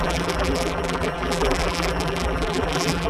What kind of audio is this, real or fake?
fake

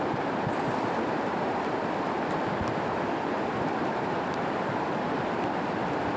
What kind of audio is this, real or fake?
fake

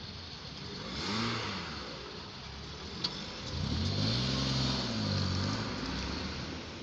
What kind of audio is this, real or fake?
real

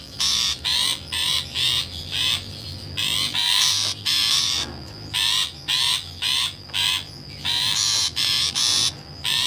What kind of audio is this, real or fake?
fake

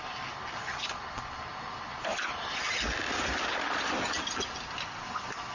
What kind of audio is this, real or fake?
real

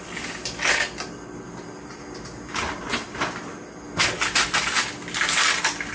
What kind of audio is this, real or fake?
real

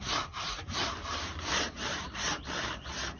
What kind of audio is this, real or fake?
fake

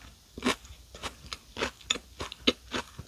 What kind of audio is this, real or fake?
real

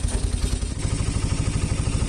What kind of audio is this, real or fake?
real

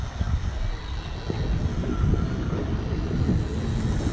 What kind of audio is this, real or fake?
real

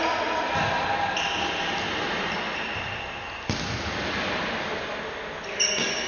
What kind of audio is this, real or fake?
real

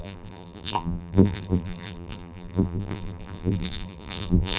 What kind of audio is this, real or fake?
fake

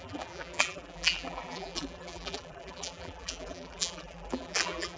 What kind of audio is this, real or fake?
fake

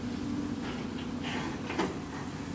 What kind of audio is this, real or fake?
real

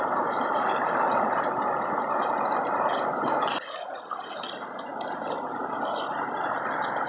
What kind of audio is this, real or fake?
real